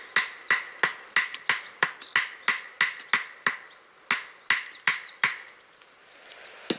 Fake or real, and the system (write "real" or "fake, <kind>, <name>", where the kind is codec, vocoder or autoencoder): real